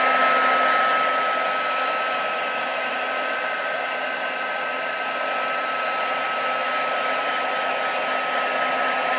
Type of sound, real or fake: real